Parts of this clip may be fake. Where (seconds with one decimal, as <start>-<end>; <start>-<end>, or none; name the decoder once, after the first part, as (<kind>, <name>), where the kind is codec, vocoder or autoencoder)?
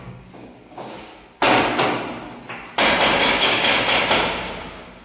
0.0-1.1 (codec, DAC); 3.2-3.7; 4.6-5.0